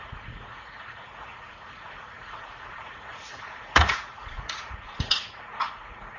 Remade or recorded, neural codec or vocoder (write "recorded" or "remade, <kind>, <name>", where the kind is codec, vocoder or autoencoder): remade, vocoder, Vocos